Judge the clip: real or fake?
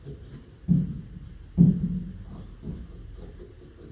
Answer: real